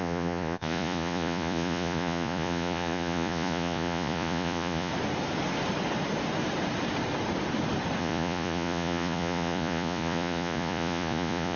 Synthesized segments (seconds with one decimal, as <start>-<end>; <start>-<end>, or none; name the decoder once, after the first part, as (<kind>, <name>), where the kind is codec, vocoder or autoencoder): 0.0-4.9 (vocoder, Vocos); 8.0-11.6